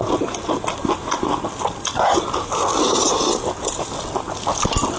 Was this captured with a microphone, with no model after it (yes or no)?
yes